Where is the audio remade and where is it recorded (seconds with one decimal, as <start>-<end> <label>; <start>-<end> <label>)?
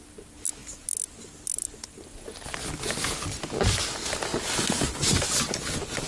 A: 0.0-6.1 recorded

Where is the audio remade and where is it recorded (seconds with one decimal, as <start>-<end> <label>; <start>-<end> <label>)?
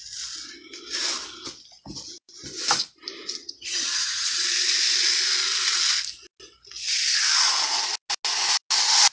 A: 0.0-3.4 recorded; 3.4-4.4 remade; 4.4-9.1 recorded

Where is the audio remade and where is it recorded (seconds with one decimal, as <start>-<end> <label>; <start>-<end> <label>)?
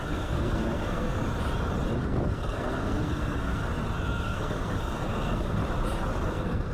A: 0.0-1.2 remade; 1.2-2.0 recorded; 2.0-3.6 remade; 3.6-4.2 recorded; 4.2-5.6 remade; 5.6-6.3 recorded; 6.3-6.7 remade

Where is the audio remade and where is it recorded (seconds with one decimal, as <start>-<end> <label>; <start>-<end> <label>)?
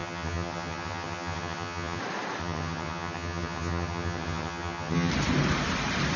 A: 0.0-2.0 remade; 2.0-2.4 recorded; 2.4-5.1 remade; 5.1-6.2 recorded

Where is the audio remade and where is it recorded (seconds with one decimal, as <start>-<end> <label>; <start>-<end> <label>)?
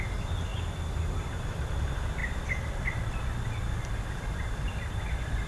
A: 0.0-0.5 remade; 0.5-1.1 recorded; 1.1-5.5 remade